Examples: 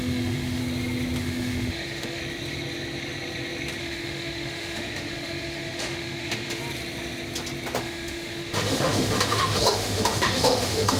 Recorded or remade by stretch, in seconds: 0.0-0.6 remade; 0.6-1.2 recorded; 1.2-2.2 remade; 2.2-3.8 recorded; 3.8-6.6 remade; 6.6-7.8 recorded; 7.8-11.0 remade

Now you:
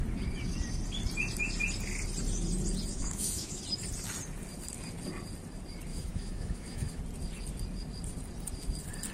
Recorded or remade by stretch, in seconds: 0.0-2.9 recorded; 2.9-3.6 remade; 3.6-5.9 recorded; 5.9-7.0 remade; 7.0-9.1 recorded